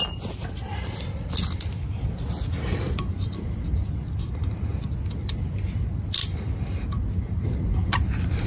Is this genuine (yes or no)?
yes